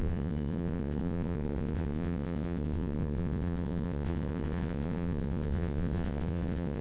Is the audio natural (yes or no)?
no